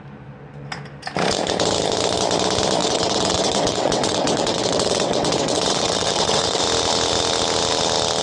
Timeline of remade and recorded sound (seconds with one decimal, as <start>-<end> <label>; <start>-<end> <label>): 0.0-2.8 recorded; 2.8-6.6 remade; 6.6-8.2 recorded